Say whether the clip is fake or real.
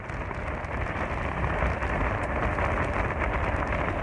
real